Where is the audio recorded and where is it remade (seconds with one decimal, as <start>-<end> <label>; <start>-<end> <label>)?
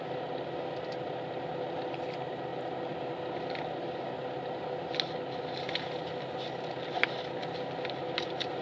0.0-8.6 recorded